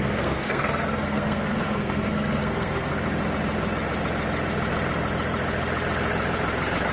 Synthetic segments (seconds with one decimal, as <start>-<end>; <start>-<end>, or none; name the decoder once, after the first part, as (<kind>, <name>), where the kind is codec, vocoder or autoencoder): 0.0-2.9 (codec, SNAC)

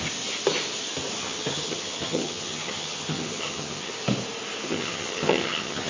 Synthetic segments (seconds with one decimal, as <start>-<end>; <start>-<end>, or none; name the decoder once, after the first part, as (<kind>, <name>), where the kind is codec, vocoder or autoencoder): 1.2-3.9 (vocoder, HiFi-GAN); 4.7-5.9

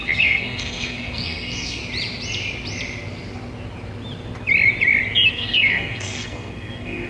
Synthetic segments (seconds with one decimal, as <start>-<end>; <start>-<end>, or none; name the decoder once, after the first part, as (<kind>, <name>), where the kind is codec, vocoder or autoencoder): 0.0-1.8 (codec, SNAC); 5.3-7.1

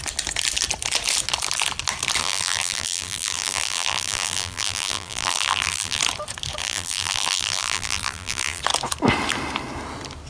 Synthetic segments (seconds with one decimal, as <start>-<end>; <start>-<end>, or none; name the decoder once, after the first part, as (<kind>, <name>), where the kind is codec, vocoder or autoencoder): 2.2-6.0 (vocoder, BigVGAN v2); 6.6-8.6

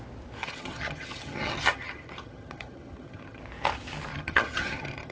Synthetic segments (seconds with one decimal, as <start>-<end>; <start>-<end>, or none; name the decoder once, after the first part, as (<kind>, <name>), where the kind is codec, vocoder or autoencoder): 0.4-3.4 (vocoder, HiFi-GAN); 4.1-5.1